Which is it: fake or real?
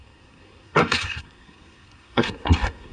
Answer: fake